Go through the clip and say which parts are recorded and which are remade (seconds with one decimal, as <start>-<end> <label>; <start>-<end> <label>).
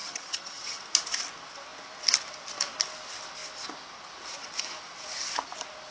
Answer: 0.0-0.8 remade; 0.8-5.9 recorded